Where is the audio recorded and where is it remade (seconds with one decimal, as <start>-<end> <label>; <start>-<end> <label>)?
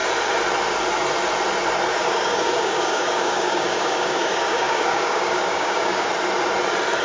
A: 0.0-1.9 recorded; 1.9-6.1 remade; 6.1-7.0 recorded